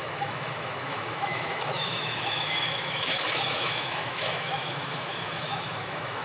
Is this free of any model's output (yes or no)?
no